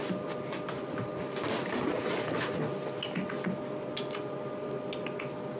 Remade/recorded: recorded